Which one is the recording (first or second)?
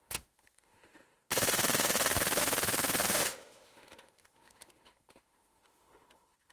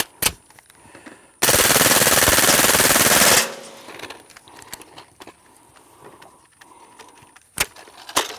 second